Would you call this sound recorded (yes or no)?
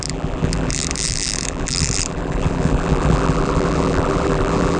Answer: no